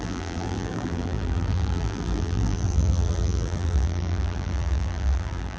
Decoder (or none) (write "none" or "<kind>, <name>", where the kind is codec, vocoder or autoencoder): vocoder, BigVGAN v2